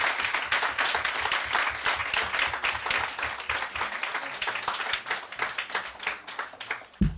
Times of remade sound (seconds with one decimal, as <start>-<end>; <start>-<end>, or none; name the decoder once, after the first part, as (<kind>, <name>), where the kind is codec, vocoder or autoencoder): none